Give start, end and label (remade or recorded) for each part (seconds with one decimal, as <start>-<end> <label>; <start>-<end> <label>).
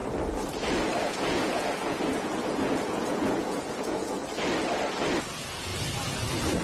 0.0-1.0 recorded; 1.0-4.2 remade; 4.2-5.2 recorded; 5.2-5.7 remade; 5.7-6.6 recorded